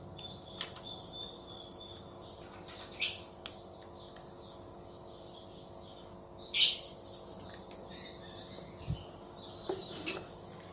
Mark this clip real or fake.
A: real